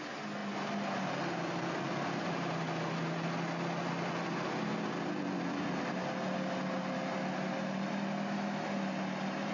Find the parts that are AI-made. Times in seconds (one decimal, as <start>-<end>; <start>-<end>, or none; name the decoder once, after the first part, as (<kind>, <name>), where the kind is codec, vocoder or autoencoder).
none